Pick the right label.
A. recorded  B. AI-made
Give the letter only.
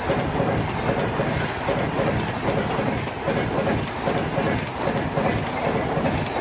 A